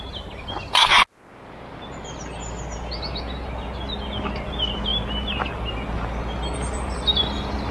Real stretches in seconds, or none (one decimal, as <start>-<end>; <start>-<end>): 0.0-7.7